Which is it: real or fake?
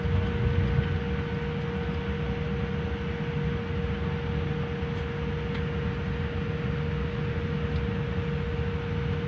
real